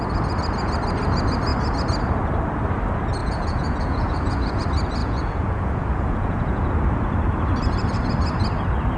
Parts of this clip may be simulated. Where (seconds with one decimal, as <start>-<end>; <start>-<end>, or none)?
3.2-4.6; 5.0-6.7